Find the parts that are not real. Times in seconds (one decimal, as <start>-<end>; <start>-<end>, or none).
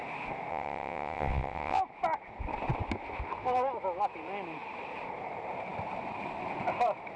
0.5-1.8